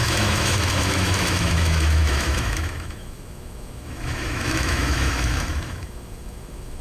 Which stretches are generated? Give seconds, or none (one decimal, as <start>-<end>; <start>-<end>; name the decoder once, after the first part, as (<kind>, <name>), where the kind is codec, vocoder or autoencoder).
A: 0.0-6.8 (autoencoder, DAC-VAE)